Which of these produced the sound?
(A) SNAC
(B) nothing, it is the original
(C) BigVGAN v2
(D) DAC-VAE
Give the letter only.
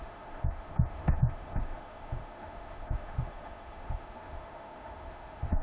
D